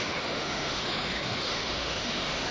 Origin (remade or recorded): remade